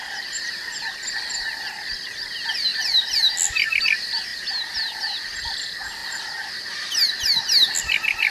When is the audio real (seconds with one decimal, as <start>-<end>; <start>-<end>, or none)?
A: 0.0-8.3